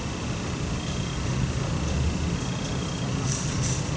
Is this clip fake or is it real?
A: real